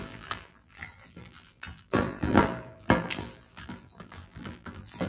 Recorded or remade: remade